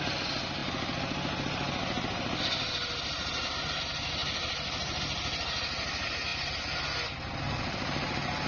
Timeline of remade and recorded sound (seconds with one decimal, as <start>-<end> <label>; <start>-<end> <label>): 0.0-8.5 recorded